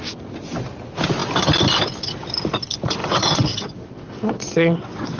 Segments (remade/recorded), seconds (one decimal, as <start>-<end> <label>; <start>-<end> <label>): 0.0-3.0 recorded; 3.0-5.2 remade